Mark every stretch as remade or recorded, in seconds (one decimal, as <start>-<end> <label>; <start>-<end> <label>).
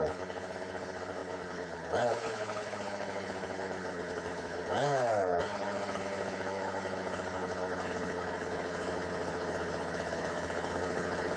0.0-11.4 remade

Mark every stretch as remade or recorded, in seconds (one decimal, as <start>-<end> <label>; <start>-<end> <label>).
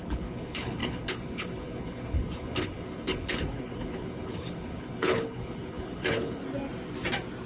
0.0-6.4 remade; 6.4-7.5 recorded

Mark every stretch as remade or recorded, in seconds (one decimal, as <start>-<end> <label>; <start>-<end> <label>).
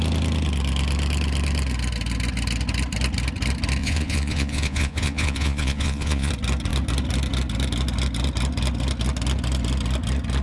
0.0-3.8 recorded; 3.8-6.3 remade; 6.3-10.4 recorded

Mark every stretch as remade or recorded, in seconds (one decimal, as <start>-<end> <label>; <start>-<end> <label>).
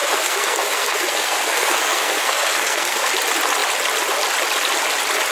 0.0-3.1 remade; 3.1-5.3 recorded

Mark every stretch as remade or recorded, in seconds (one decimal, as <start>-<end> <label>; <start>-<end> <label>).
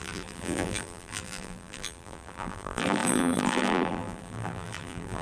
0.0-5.2 remade